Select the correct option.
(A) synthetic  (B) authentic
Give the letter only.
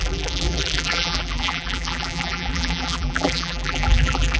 A